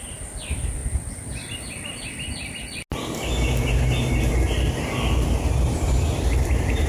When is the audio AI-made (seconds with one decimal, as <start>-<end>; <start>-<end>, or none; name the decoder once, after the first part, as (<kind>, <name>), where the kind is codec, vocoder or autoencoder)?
0.0-0.8 (vocoder, BigVGAN v2); 4.9-6.9